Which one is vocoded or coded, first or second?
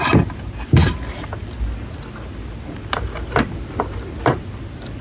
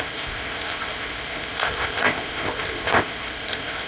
second